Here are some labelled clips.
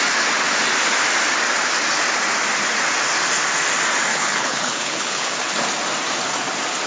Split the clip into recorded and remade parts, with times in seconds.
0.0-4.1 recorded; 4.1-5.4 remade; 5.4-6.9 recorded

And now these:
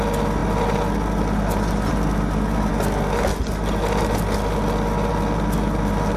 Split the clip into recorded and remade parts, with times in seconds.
0.0-6.2 recorded

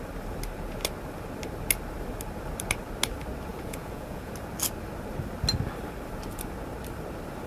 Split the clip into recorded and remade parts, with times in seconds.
0.0-3.5 recorded; 3.5-4.3 remade; 4.3-7.5 recorded

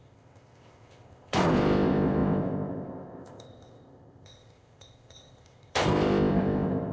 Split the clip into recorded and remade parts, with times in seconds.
0.0-6.9 remade